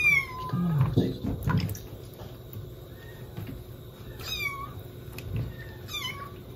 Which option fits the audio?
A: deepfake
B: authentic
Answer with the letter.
B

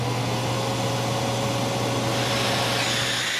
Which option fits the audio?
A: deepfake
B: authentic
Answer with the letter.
B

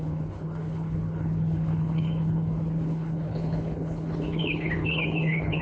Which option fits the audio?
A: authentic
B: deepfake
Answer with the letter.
B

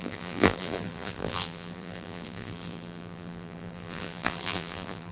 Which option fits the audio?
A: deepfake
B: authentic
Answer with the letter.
A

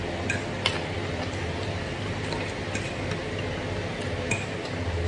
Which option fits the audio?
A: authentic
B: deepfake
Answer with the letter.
A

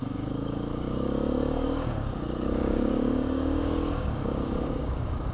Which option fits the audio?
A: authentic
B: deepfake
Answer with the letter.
B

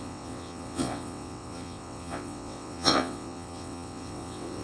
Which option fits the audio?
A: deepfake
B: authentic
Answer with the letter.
A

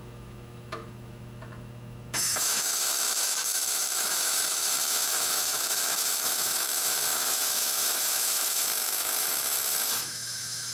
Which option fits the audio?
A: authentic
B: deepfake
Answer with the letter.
B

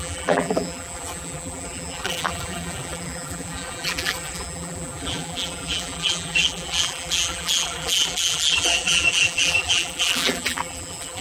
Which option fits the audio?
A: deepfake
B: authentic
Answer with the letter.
A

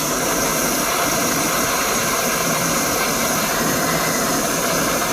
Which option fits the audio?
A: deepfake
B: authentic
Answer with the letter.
A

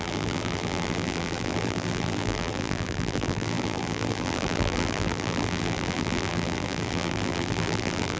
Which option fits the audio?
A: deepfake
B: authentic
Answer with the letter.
A